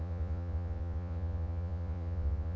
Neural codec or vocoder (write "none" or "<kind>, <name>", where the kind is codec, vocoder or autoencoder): vocoder, Vocos